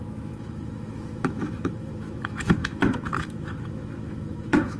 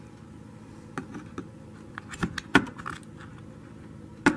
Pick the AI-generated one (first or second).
first